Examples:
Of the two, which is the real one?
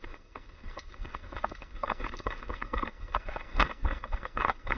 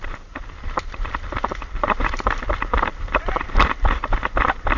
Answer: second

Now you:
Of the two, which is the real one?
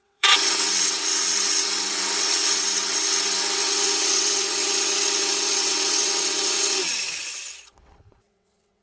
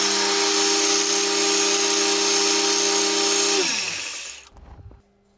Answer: second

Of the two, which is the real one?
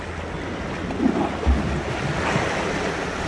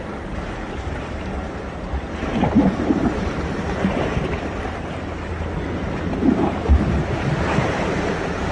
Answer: first